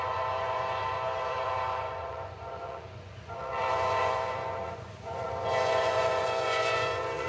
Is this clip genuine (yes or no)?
no